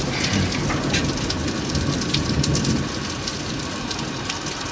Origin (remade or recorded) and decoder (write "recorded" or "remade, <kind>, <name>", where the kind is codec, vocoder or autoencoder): recorded